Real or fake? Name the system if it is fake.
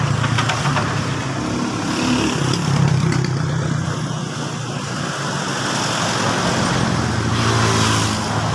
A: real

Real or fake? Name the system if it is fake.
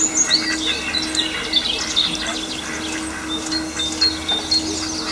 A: real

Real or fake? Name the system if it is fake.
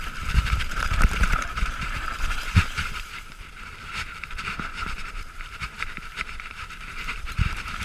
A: fake, vocoder, BigVGAN v2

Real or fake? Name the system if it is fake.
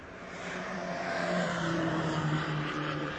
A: fake, vocoder, BigVGAN v2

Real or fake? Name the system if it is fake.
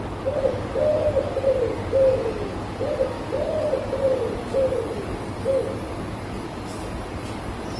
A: real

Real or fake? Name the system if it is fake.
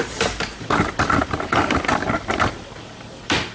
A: fake, vocoder, BigVGAN v2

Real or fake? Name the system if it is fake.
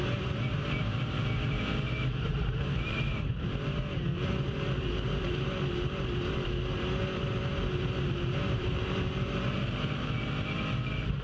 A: fake, vocoder, BigVGAN v2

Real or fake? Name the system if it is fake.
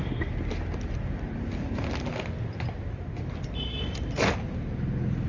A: real